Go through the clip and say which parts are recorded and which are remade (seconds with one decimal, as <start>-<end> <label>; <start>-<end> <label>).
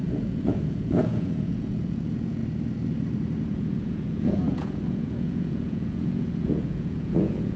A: 0.0-2.4 remade; 2.4-3.5 recorded; 3.5-7.6 remade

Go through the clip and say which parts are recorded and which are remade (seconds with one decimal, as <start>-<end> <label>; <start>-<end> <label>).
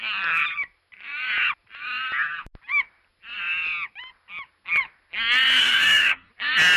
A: 0.0-5.6 recorded; 5.6-6.3 remade; 6.3-6.8 recorded